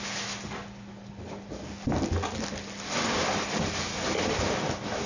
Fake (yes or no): no